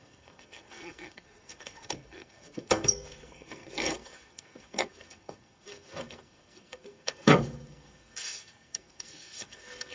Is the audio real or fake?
fake